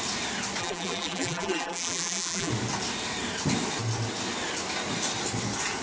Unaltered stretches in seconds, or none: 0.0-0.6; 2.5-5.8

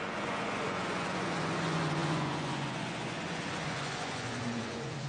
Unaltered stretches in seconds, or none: none

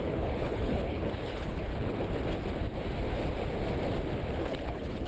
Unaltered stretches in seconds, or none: 1.7-4.4